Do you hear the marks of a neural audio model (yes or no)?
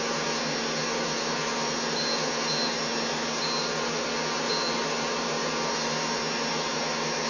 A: no